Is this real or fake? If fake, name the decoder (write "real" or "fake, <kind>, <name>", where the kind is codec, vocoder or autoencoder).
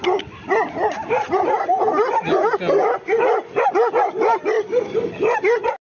real